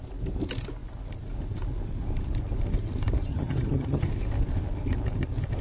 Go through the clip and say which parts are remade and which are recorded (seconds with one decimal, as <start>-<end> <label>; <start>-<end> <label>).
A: 0.0-3.3 recorded; 3.3-4.1 remade; 4.1-5.6 recorded